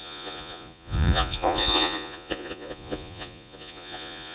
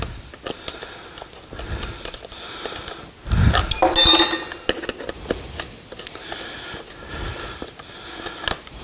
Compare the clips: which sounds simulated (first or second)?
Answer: first